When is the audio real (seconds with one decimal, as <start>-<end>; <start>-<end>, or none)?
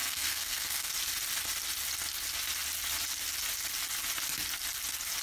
0.9-5.2